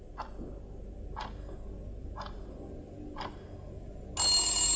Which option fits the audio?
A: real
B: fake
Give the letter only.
A